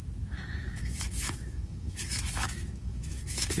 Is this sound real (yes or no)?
no